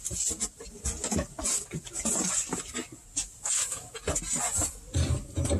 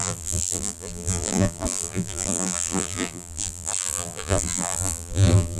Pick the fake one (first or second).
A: second